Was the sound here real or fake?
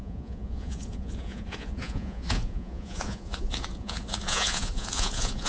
fake